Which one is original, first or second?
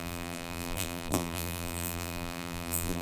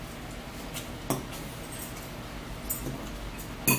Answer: second